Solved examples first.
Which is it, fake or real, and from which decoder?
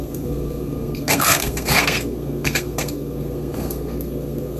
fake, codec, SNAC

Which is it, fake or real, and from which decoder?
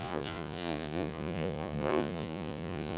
fake, vocoder, Vocos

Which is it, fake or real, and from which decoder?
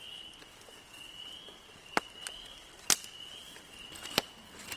real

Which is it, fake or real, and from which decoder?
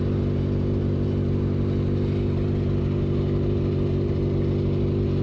real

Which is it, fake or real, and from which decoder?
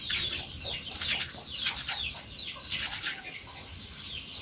real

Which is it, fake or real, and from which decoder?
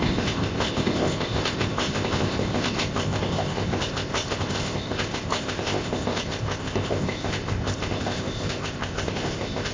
fake, codec, ZipCodec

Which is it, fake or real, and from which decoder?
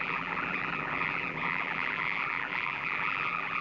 fake, vocoder, BigVGAN v2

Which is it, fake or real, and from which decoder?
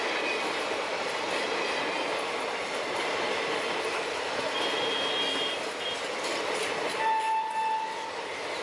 real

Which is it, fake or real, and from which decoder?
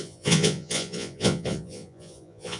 fake, vocoder, Vocos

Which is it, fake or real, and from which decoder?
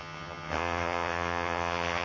fake, vocoder, HiFi-GAN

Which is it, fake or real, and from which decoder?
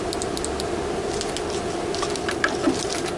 real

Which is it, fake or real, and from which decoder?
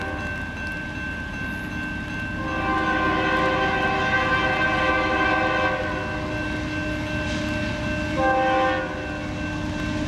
real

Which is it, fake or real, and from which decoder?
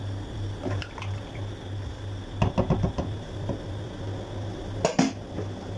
real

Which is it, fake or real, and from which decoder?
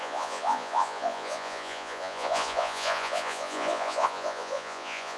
fake, vocoder, Vocos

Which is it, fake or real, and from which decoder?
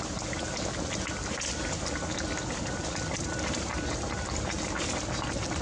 real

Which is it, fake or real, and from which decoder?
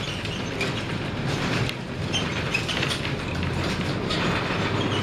real